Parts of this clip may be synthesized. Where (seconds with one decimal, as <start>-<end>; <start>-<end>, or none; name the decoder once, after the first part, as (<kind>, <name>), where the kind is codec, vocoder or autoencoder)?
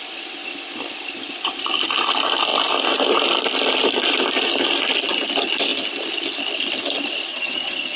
7.3-8.0 (vocoder, HiFi-GAN)